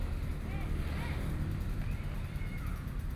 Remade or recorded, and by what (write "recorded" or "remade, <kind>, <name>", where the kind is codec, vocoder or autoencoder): recorded